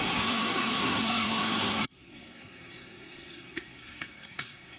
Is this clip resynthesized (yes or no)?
yes